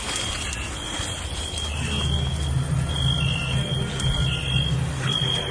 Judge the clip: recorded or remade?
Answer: recorded